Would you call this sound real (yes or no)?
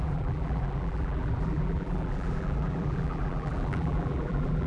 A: no